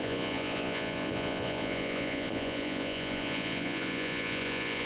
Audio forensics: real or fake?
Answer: fake